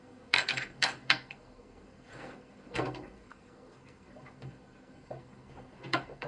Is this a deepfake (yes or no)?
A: yes